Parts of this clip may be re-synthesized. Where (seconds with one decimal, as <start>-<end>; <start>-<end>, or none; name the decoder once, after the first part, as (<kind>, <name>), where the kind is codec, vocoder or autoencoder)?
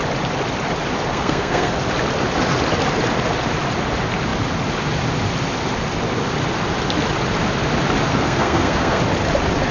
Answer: 1.1-1.8 (codec, SNAC); 8.1-9.0